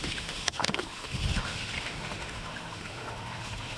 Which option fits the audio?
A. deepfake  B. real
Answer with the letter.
A